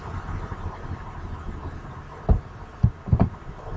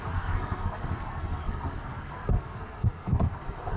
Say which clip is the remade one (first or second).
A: second